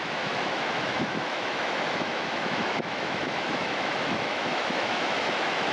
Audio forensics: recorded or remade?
remade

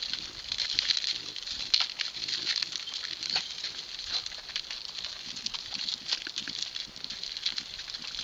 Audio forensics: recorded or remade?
recorded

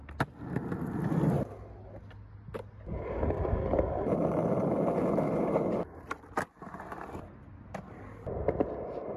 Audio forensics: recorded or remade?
recorded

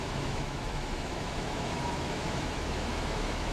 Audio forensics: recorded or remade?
remade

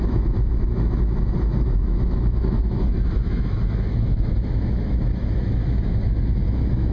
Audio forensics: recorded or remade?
remade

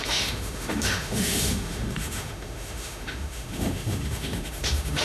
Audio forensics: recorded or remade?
remade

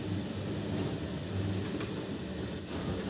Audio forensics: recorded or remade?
recorded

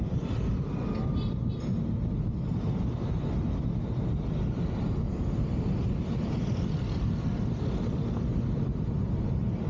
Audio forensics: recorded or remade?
recorded